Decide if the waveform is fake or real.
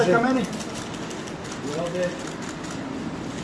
real